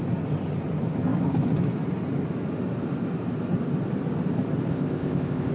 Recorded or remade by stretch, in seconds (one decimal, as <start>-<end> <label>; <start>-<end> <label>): 0.0-4.7 recorded; 4.7-5.5 remade